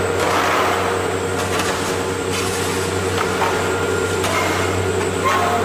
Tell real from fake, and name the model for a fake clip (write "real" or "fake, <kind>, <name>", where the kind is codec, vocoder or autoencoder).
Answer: real